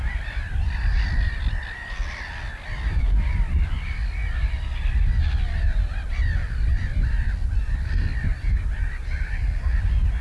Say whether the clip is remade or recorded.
recorded